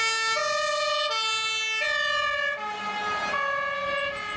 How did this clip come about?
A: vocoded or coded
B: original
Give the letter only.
B